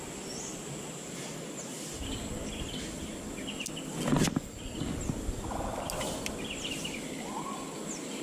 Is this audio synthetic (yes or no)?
no